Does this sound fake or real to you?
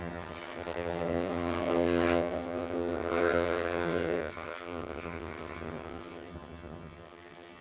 fake